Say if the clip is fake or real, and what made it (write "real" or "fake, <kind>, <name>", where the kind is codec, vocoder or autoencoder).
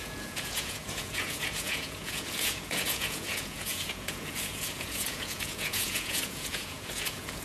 fake, vocoder, Vocos